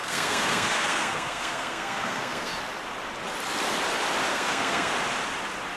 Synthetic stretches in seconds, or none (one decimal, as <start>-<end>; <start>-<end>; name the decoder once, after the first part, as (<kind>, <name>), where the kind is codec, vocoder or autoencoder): 0.0-2.5 (codec, SNAC); 4.3-4.9